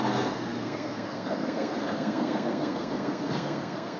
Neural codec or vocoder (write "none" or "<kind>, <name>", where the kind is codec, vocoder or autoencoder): codec, SNAC